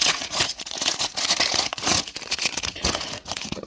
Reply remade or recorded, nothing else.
remade